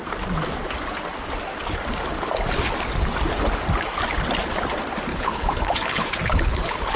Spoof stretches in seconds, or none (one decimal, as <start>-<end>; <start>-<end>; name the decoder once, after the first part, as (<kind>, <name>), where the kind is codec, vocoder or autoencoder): 5.1-7.0 (codec, HILCodec)